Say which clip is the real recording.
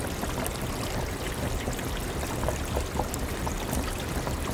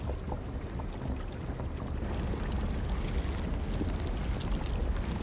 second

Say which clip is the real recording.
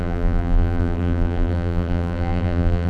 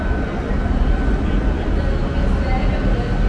second